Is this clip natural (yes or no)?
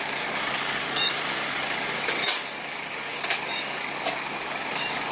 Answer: no